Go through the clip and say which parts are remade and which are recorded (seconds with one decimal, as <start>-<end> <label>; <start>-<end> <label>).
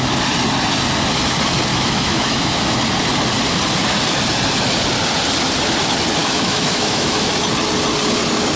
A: 0.0-1.7 recorded; 1.7-2.8 remade; 2.8-6.2 recorded; 6.2-7.3 remade; 7.3-8.6 recorded